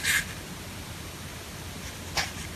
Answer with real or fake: real